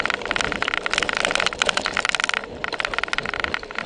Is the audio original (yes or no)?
yes